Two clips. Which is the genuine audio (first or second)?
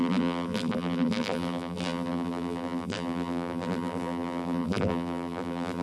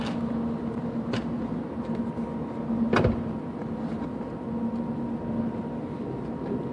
second